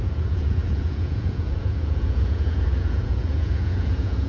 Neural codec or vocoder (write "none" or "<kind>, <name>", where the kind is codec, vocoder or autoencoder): vocoder, Vocos